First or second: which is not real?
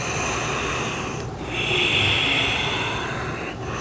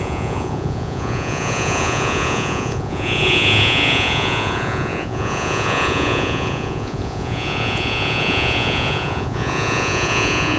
second